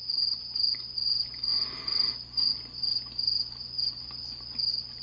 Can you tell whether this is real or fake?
real